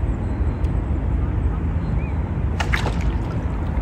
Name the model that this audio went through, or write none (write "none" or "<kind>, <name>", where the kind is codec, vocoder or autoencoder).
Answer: none